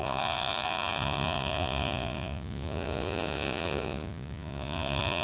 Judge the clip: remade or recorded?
remade